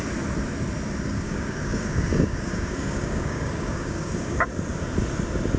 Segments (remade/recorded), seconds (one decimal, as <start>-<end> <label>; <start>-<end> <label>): 0.0-1.1 recorded; 1.1-4.5 remade; 4.5-5.6 recorded